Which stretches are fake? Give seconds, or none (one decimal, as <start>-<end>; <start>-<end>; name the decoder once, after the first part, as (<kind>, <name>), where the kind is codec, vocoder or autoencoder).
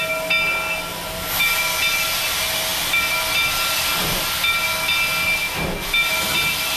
0.9-1.4 (vocoder, BigVGAN v2)